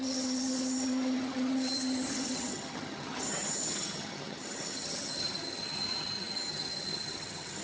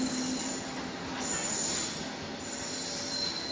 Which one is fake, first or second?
first